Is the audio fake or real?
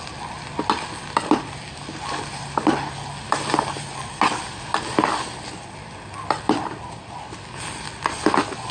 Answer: real